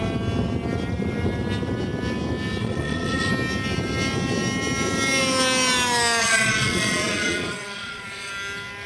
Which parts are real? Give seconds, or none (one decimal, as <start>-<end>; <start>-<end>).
0.0-2.6; 3.3-6.2; 8.3-8.9

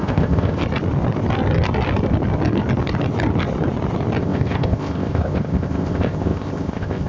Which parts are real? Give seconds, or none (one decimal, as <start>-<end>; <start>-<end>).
0.6-4.2

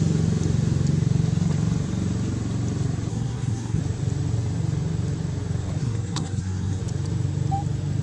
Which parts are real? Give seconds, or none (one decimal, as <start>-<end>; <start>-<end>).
0.0-3.1; 3.8-5.8; 6.8-8.0

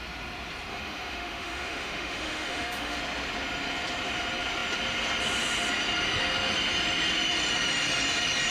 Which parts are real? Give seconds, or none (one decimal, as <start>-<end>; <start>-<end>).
0.0-0.7; 3.0-8.5

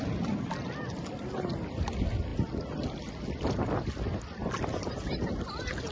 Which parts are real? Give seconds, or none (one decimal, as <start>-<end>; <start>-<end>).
0.0-5.9